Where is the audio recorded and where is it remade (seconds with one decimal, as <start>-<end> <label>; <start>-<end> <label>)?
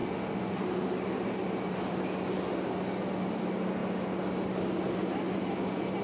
0.0-6.0 recorded